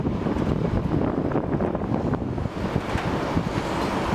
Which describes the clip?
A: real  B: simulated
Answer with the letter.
A